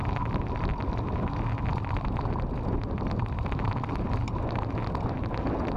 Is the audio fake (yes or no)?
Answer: no